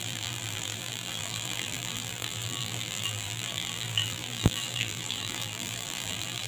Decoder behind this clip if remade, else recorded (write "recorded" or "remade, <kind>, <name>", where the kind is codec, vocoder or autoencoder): remade, vocoder, BigVGAN v2